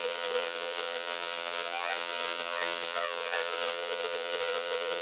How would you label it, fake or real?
fake